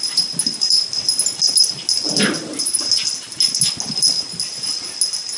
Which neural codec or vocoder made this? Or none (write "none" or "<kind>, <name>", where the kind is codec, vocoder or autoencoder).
none